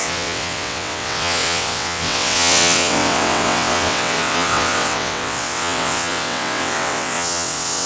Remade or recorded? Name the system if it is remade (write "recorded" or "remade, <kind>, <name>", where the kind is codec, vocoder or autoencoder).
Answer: remade, vocoder, WaveNeXt